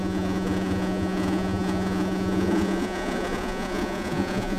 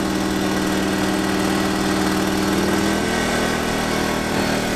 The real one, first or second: second